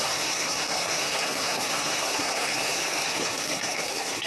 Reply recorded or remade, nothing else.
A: remade